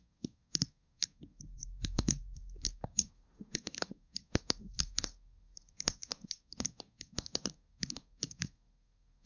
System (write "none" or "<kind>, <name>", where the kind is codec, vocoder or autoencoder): codec, SNAC